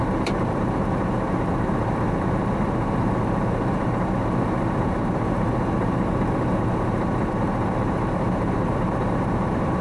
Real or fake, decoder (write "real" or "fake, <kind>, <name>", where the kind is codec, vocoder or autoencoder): fake, vocoder, BigVGAN v2